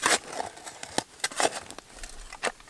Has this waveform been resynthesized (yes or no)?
no